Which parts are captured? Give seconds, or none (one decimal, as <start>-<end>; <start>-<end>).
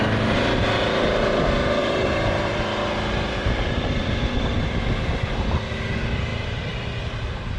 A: 0.0-1.8; 4.9-7.6